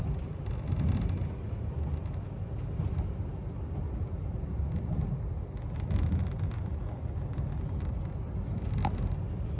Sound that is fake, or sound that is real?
real